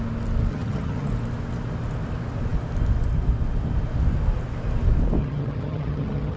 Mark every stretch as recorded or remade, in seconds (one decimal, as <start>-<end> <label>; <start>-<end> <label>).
0.0-0.5 recorded; 0.5-1.1 remade; 1.1-5.2 recorded; 5.2-6.4 remade